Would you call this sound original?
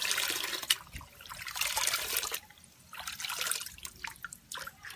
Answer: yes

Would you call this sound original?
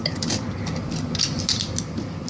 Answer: yes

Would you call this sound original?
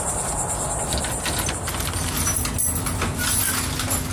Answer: yes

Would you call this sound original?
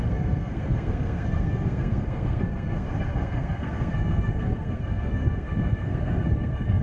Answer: no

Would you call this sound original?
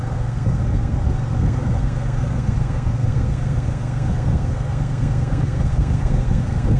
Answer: no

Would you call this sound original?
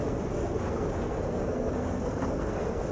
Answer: no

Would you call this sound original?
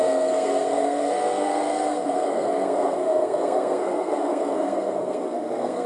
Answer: no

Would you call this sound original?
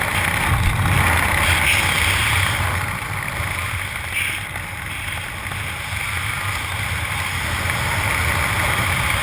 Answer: yes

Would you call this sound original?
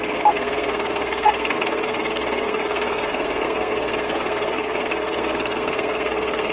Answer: no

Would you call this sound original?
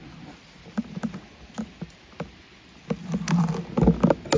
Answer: yes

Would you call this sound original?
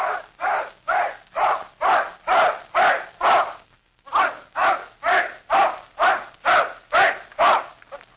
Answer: yes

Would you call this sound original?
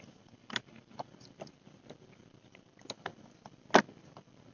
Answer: yes